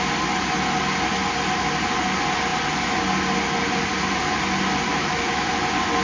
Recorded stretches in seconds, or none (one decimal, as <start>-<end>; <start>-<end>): 0.0-5.0; 5.5-6.0